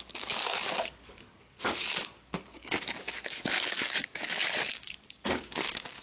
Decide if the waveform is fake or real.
fake